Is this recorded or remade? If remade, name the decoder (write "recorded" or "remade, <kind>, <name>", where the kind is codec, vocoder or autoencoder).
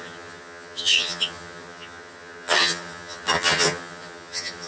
remade, vocoder, HiFi-GAN